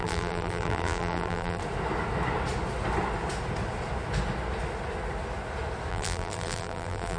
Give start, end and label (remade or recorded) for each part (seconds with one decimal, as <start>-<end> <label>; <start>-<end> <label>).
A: 0.0-1.6 remade; 1.6-5.9 recorded; 5.9-7.2 remade